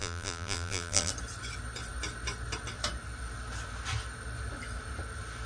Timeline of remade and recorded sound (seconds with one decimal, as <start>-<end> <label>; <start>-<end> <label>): 0.0-1.1 remade; 1.1-5.5 recorded